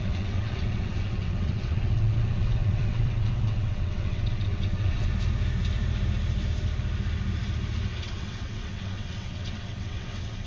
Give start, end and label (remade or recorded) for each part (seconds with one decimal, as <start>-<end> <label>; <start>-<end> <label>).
0.0-5.1 remade; 5.1-8.0 recorded; 8.0-10.5 remade